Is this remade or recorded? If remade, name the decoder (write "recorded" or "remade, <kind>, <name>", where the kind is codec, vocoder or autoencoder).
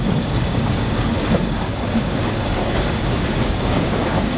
remade, codec, DAC